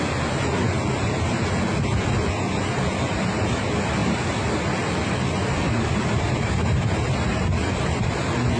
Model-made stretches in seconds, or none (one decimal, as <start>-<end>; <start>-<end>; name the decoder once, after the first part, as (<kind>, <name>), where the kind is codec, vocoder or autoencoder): 4.0-8.2 (vocoder, BigVGAN v2)

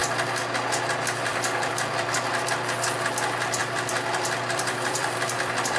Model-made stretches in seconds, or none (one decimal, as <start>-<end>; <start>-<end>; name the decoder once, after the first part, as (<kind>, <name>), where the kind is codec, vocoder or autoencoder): 1.3-2.5 (vocoder, BigVGAN v2); 3.6-5.8

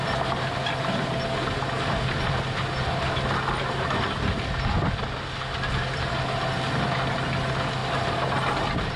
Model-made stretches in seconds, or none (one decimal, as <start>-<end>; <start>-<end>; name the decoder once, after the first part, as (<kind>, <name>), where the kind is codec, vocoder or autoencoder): none

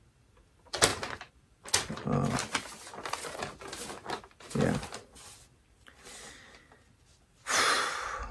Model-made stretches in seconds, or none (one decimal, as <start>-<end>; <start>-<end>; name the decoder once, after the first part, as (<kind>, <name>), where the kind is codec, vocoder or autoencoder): none

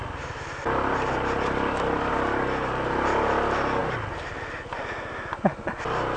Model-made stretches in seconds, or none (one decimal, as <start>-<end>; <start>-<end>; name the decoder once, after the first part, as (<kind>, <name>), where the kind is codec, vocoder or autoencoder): 0.0-2.1 (vocoder, BigVGAN v2)

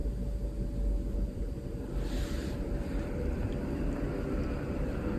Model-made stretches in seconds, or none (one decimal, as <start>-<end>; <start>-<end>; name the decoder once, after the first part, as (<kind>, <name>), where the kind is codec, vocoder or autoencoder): 1.1-3.4 (vocoder, BigVGAN v2); 4.0-5.2

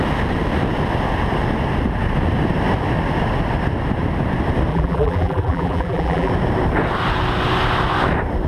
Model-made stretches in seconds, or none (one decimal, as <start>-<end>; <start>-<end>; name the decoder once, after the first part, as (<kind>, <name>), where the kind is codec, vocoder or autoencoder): 4.7-6.3 (vocoder, BigVGAN v2)